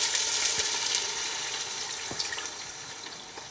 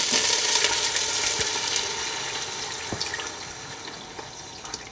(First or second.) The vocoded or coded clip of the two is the first